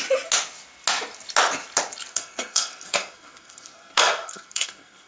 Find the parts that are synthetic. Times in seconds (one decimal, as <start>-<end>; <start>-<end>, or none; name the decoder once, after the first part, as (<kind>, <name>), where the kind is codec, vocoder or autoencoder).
2.1-5.1 (codec, SNAC)